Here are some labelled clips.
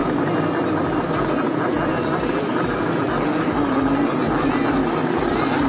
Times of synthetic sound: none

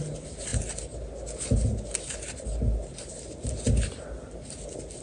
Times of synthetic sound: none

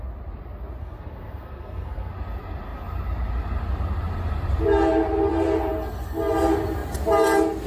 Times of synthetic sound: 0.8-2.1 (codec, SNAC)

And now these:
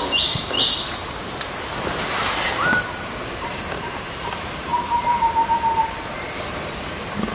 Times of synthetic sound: 0.0-7.3 (vocoder, BigVGAN v2)

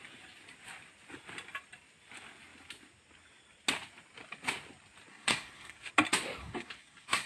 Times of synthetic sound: 5.1-5.9 (codec, SNAC); 6.4-7.3